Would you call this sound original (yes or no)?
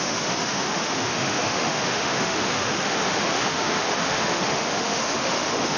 no